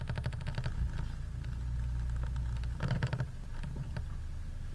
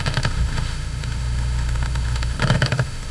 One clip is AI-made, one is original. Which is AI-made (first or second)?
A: second